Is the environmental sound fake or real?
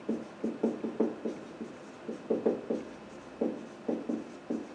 real